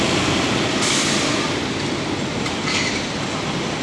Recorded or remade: remade